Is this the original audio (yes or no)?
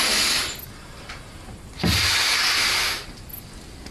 yes